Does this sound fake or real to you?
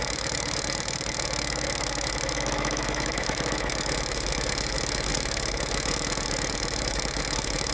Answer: fake